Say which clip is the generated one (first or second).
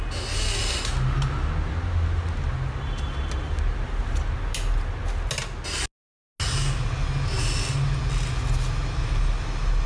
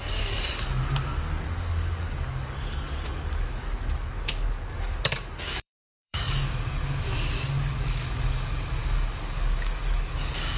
second